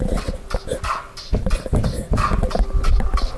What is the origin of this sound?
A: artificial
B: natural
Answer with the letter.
B